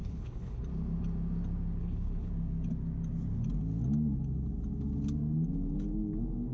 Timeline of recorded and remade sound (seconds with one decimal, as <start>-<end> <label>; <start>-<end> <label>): 0.0-0.6 remade; 0.6-1.8 recorded; 1.8-2.3 remade; 2.3-6.5 recorded